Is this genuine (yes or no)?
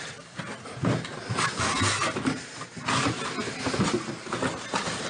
yes